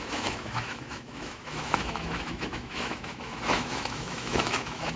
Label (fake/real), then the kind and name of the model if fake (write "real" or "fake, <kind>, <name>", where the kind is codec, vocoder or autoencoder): fake, autoencoder, DAC-VAE